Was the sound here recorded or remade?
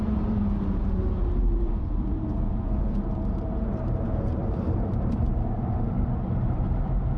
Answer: remade